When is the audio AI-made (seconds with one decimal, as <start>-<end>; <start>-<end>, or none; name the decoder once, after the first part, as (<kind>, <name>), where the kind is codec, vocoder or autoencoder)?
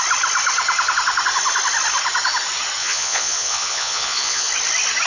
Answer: 2.8-4.5 (vocoder, Vocos)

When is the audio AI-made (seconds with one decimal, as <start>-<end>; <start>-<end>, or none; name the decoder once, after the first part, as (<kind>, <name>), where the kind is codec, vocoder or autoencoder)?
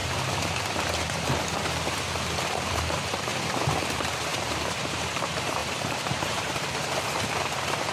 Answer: 2.4-3.3 (vocoder, BigVGAN v2); 3.9-7.9